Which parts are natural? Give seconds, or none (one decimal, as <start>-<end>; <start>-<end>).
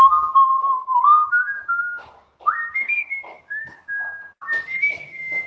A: 1.2-1.8; 3.8-4.8